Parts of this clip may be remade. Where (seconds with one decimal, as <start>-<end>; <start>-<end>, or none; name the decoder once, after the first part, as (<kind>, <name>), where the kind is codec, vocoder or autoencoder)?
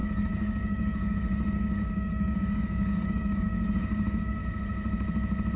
0.0-4.4 (codec, DAC)